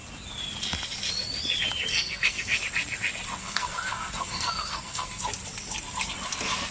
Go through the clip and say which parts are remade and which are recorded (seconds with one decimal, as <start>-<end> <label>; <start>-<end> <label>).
0.0-1.9 recorded; 1.9-2.6 remade; 2.6-3.4 recorded; 3.4-5.2 remade; 5.2-6.7 recorded